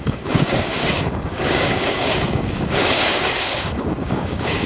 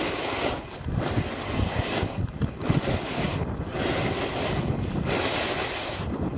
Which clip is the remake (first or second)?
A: first